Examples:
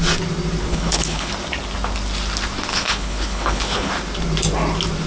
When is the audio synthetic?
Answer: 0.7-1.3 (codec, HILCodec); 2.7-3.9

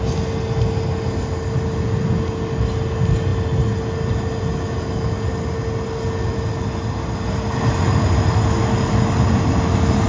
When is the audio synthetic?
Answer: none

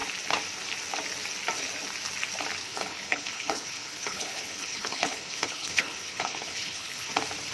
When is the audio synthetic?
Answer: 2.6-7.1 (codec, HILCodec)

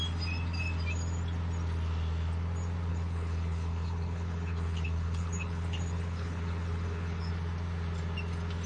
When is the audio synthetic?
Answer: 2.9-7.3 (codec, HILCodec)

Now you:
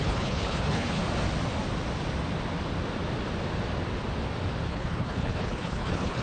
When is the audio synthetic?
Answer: 0.0-1.0 (codec, HILCodec); 4.7-6.2

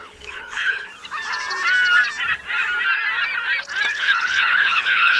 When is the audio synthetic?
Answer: 0.0-0.9 (codec, HILCodec); 3.9-5.2